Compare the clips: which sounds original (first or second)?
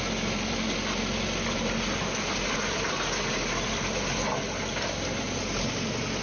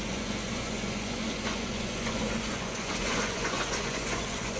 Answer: first